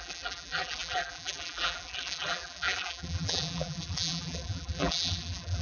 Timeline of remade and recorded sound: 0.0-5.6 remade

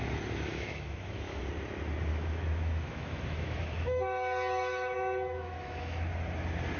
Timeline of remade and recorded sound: 0.0-0.5 recorded; 0.5-1.4 remade; 1.4-2.1 recorded; 2.1-6.1 remade; 6.1-6.8 recorded

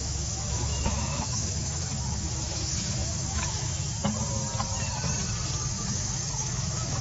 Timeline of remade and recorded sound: 0.0-4.0 remade; 4.0-5.7 recorded; 5.7-7.0 remade

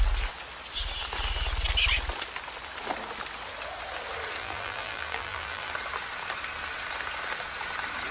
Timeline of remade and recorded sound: 0.0-4.4 recorded; 4.4-5.7 remade; 5.7-8.1 recorded